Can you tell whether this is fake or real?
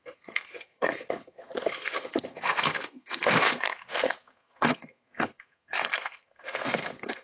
fake